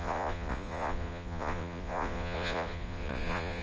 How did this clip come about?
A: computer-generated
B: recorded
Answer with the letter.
A